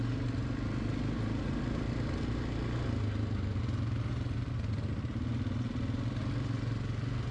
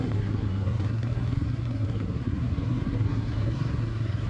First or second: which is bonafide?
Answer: first